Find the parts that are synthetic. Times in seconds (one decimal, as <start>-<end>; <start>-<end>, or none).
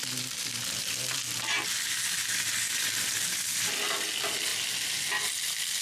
none